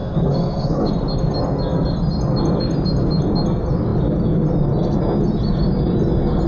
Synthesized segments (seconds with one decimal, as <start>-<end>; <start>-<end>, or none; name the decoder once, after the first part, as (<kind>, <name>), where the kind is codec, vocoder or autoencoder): 0.0-0.9 (codec, SNAC)